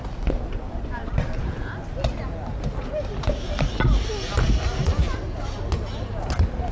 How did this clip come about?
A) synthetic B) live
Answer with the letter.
B